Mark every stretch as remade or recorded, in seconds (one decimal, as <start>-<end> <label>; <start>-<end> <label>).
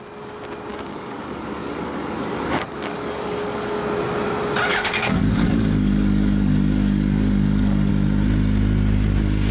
0.0-0.7 recorded; 0.7-3.8 remade; 3.8-4.7 recorded; 4.7-7.9 remade; 7.9-9.5 recorded